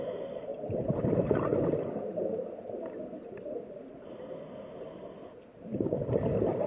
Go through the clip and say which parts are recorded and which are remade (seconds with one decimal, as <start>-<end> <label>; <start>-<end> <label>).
0.0-6.7 recorded